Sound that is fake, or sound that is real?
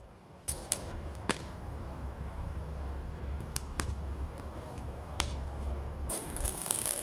fake